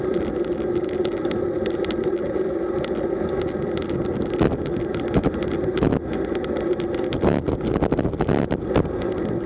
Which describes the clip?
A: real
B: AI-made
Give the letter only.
A